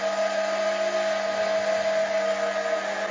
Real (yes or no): yes